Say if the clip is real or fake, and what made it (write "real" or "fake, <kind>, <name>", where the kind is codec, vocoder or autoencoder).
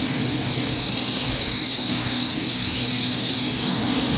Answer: fake, codec, DAC